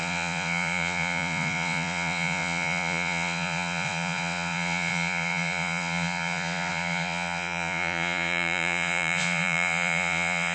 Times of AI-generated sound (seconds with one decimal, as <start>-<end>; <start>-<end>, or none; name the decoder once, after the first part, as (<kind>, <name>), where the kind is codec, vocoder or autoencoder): 0.0-10.5 (vocoder, Vocos)